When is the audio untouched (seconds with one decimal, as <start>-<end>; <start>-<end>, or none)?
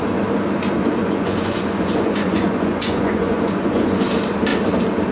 0.0-1.0; 4.1-5.1